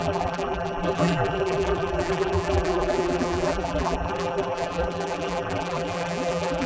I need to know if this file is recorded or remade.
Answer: remade